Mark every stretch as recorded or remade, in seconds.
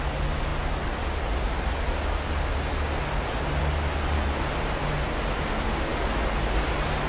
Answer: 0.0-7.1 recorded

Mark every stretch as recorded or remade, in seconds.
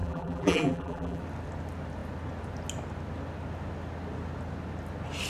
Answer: 0.0-1.2 remade; 1.2-5.3 recorded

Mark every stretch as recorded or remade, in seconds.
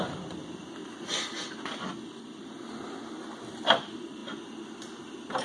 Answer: 0.0-0.8 remade; 0.8-2.2 recorded; 2.2-4.2 remade; 4.2-5.4 recorded